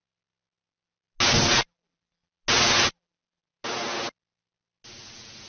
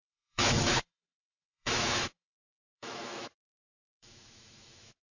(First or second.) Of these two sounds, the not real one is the second